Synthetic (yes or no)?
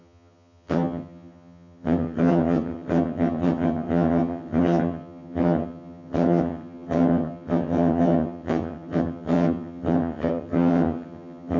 yes